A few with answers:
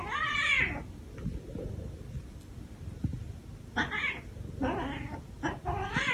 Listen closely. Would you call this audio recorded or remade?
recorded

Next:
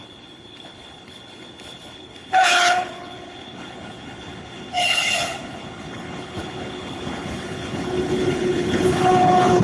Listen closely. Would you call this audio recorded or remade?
remade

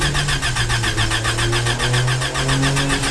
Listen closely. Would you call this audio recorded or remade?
recorded